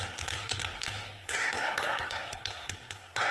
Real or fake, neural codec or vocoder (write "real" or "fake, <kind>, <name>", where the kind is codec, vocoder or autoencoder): fake, codec, SNAC